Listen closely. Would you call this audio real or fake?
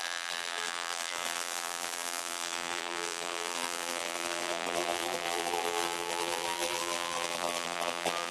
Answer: fake